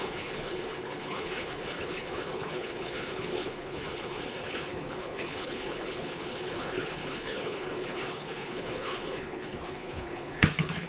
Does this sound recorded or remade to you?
remade